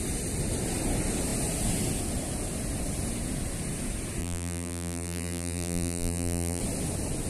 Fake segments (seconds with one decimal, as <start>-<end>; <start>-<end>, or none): 4.2-6.6